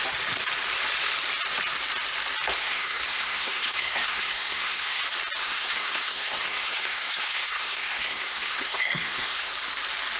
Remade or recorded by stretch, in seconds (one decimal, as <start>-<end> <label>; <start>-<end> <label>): 0.0-2.6 recorded; 2.6-5.0 remade; 5.0-5.4 recorded; 5.4-9.5 remade; 9.5-10.2 recorded